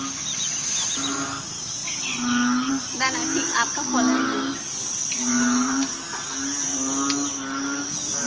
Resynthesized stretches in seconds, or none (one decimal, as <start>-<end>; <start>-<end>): none